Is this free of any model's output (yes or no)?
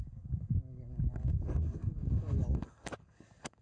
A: no